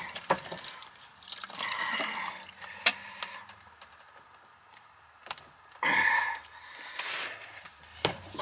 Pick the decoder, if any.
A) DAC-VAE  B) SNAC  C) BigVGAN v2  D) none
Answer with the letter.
D